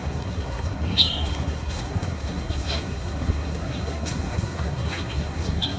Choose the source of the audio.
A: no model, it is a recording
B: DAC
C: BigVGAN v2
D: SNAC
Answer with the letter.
D